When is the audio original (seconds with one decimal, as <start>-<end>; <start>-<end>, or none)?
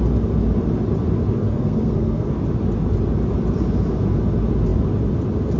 0.0-1.4; 2.4-5.6